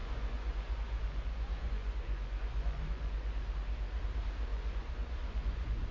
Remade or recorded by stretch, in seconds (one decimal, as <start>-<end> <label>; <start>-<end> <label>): 0.0-3.5 remade; 3.5-4.5 recorded; 4.5-5.9 remade